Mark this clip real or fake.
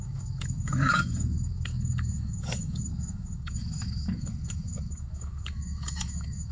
fake